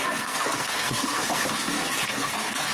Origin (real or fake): fake